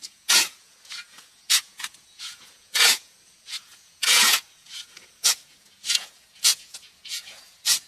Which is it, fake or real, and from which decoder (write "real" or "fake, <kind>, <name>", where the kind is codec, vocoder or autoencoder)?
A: fake, vocoder, Vocos